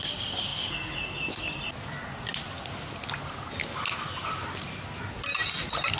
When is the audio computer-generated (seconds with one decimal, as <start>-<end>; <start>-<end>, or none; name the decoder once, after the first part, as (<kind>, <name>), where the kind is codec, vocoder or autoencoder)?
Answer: 0.0-0.5 (vocoder, BigVGAN v2); 1.5-2.3; 5.0-6.0

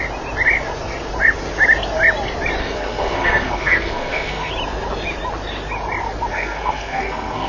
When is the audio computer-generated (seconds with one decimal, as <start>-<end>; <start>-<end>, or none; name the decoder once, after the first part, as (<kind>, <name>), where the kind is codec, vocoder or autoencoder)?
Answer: 2.6-4.5 (codec, SNAC); 6.3-7.5

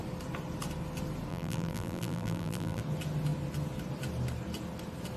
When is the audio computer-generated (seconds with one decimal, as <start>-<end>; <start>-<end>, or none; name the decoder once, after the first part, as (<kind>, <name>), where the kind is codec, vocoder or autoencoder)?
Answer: 1.3-2.8 (vocoder, BigVGAN v2)

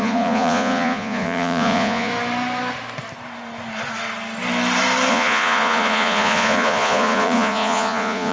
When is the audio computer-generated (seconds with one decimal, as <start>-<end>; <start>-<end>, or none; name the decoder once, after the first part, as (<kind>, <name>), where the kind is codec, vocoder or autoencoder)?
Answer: 0.0-2.1 (vocoder, Vocos); 5.1-8.3